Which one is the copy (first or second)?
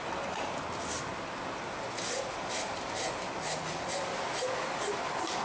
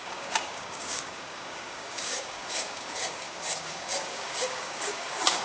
second